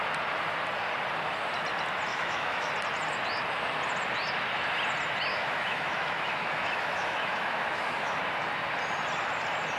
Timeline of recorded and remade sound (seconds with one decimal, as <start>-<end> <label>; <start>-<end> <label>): 0.0-2.1 recorded; 2.1-2.7 remade; 2.7-5.3 recorded; 5.3-8.2 remade; 8.2-9.8 recorded